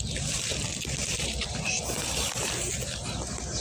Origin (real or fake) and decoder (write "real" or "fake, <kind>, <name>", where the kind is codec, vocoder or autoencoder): real